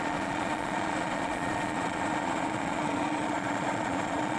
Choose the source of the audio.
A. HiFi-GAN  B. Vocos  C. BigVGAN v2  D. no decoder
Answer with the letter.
B